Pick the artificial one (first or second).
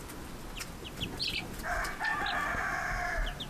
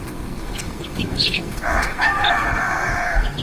second